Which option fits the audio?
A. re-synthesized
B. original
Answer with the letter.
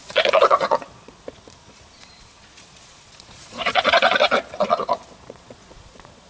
A